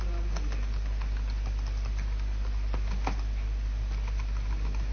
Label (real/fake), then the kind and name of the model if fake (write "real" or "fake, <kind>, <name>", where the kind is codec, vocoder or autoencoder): real